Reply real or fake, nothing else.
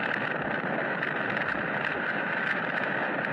real